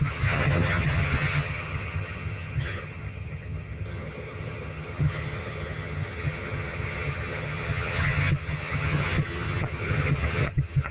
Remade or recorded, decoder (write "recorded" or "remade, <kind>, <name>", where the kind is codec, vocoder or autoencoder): remade, vocoder, HiFi-GAN